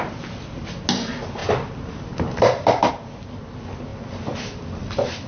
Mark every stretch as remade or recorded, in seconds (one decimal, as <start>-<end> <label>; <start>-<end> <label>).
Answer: 0.0-1.4 recorded; 1.4-2.9 remade; 2.9-3.9 recorded; 3.9-5.3 remade